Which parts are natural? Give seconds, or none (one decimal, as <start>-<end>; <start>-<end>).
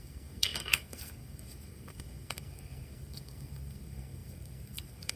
none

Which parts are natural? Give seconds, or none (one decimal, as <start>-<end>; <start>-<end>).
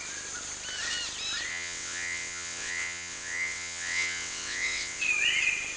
0.0-1.5; 5.0-5.8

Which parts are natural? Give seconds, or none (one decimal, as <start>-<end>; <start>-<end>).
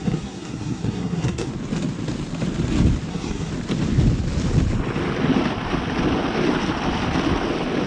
1.5-3.1; 3.5-7.9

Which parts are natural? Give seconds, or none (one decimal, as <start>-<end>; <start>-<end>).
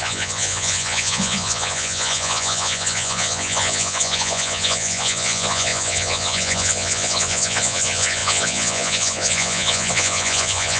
none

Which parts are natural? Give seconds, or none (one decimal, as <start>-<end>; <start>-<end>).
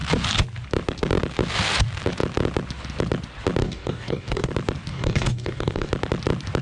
0.0-3.6; 4.5-4.9; 5.9-6.6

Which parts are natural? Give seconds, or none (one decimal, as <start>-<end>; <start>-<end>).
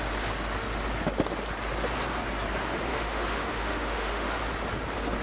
0.0-2.9; 4.3-5.2